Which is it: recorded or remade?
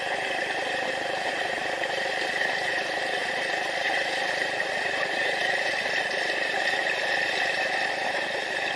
remade